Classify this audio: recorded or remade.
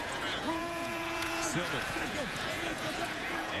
remade